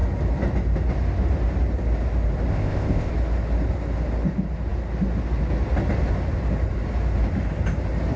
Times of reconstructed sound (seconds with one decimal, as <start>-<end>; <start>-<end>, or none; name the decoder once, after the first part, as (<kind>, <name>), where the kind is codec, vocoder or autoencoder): 2.5-3.1 (codec, ZipCodec)